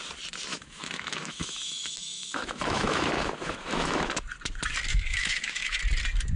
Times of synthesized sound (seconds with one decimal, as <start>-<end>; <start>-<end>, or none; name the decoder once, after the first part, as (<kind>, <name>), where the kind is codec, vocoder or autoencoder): 0.5-4.1 (autoencoder, DAC-VAE); 4.9-5.8